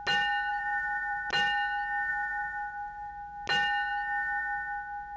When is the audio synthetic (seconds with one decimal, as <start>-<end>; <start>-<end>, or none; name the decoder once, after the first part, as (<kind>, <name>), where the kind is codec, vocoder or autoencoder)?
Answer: 0.5-1.3 (vocoder, BigVGAN v2); 2.1-3.1